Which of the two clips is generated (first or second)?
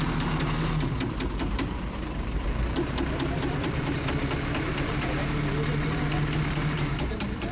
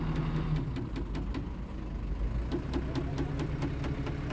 first